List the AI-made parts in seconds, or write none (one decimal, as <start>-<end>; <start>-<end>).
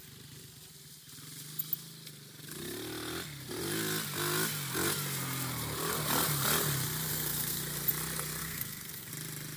7.1-7.6; 8.4-9.1